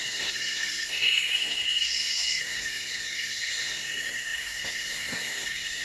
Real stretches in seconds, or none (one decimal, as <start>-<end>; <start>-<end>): none

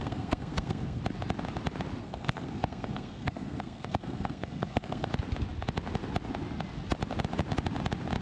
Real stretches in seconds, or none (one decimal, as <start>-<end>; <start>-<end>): 1.0-2.0; 5.1-8.2

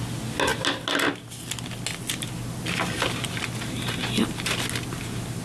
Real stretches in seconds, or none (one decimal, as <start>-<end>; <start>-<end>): 0.0-5.4

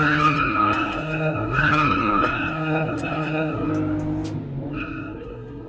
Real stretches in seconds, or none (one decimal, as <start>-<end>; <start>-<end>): 3.7-4.7

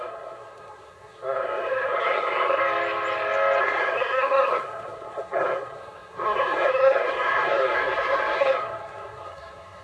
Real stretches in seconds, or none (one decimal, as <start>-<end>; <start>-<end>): 2.6-3.6

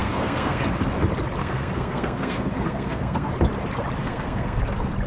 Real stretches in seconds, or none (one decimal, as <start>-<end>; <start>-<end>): 0.6-1.4; 3.3-4.0; 4.6-5.1

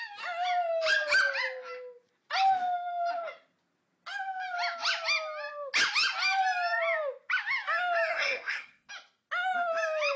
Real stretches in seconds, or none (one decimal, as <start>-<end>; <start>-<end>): 0.0-8.1; 8.9-10.2